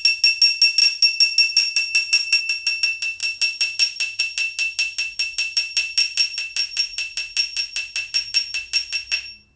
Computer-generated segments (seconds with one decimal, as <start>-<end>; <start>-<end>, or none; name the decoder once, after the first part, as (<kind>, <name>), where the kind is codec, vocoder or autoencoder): none